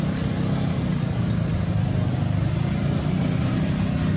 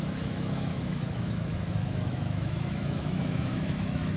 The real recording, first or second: first